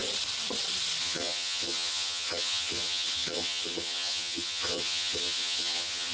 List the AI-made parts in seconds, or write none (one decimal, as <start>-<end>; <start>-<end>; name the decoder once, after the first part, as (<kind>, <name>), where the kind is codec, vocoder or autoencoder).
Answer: 1.0-6.1 (vocoder, HiFi-GAN)